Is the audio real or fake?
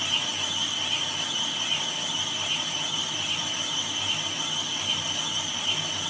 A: real